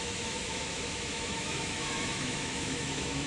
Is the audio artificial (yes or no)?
yes